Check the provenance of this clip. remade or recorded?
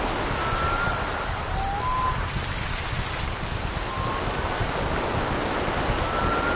recorded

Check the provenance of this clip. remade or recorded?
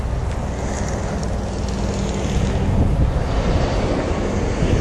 recorded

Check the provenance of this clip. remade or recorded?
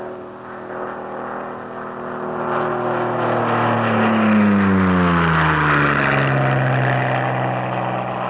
recorded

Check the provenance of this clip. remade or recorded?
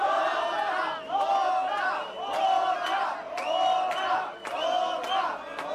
recorded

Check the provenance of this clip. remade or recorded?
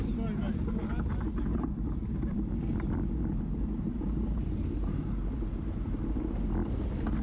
recorded